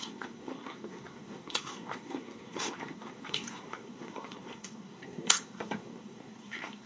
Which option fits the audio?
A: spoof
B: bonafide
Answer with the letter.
A